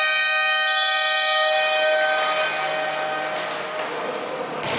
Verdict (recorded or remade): recorded